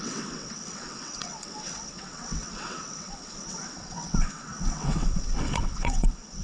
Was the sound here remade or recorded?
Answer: remade